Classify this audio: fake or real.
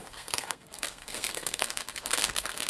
fake